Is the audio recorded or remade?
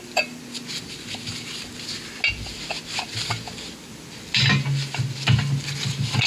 recorded